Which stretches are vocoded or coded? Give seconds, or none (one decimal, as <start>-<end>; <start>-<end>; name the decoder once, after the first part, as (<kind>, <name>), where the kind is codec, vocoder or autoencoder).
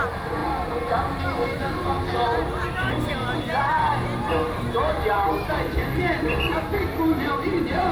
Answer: 0.0-7.9 (vocoder, BigVGAN v2)